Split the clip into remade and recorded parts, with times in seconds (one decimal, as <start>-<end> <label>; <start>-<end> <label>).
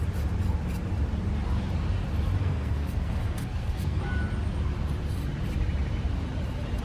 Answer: 0.0-2.4 recorded; 2.4-4.0 remade; 4.0-6.8 recorded